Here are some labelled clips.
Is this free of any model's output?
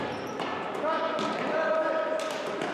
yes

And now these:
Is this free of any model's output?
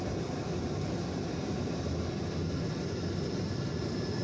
yes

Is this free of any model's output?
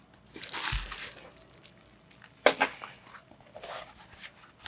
yes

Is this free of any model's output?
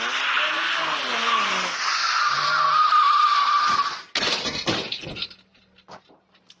yes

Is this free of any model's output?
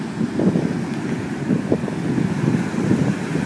yes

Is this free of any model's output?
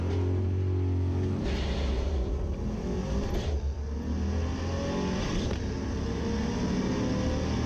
yes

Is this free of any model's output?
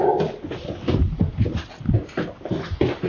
yes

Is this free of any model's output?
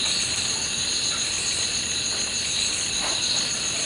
yes